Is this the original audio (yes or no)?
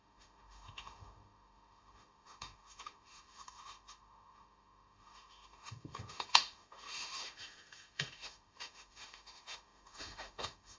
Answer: no